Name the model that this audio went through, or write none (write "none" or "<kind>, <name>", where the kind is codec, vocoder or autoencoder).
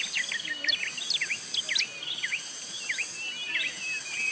none